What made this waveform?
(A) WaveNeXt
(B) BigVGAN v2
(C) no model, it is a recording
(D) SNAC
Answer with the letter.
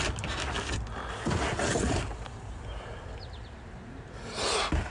C